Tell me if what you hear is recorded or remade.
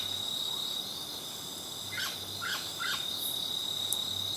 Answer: recorded